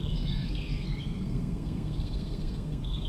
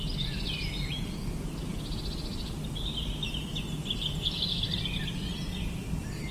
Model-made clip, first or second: first